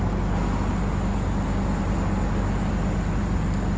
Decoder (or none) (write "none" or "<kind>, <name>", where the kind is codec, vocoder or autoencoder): none